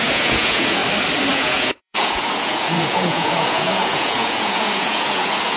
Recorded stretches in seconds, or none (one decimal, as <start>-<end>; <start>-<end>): 0.8-1.3